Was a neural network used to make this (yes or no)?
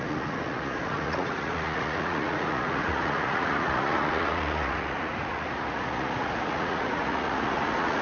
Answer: yes